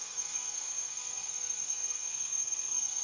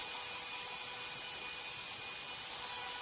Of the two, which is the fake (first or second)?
first